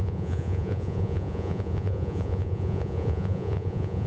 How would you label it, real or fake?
fake